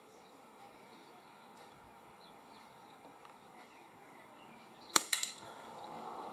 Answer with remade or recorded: remade